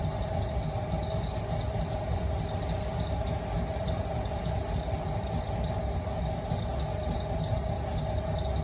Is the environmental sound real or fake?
real